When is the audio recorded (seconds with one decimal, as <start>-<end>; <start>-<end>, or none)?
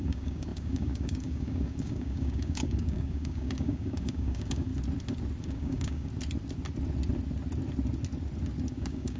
4.7-5.4; 6.1-8.7